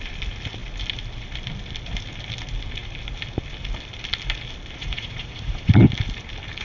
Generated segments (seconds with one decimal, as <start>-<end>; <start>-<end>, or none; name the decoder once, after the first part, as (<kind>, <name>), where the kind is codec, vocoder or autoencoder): 4.8-5.7 (vocoder, Vocos)